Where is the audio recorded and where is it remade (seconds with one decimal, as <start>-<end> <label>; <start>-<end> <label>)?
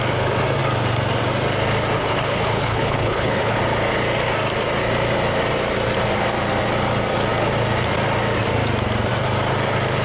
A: 0.0-2.0 recorded; 2.0-3.6 remade; 3.6-10.0 recorded